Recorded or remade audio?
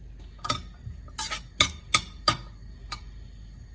recorded